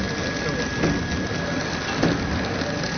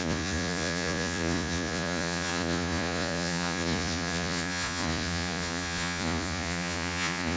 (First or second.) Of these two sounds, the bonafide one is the first